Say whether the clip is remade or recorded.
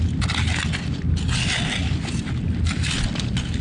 recorded